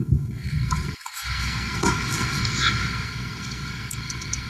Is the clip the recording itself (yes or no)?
no